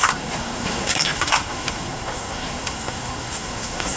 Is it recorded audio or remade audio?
remade